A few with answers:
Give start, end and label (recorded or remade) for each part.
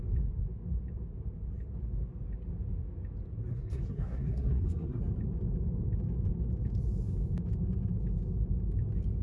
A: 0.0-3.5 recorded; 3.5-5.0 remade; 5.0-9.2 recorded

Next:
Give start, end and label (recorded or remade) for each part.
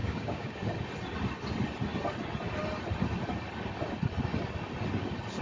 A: 0.0-0.7 remade; 0.7-5.4 recorded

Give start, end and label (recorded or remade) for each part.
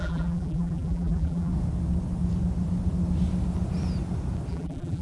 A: 0.0-1.5 remade; 1.5-4.5 recorded; 4.5-5.0 remade